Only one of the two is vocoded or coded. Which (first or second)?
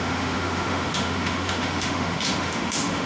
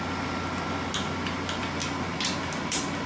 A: first